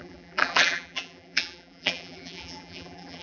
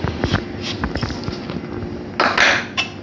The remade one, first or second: first